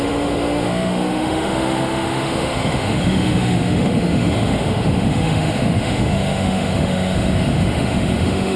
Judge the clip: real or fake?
fake